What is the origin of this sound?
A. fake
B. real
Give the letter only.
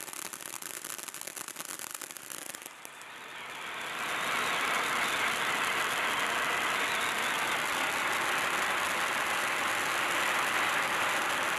B